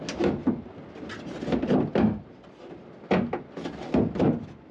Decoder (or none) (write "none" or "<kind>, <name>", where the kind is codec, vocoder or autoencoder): none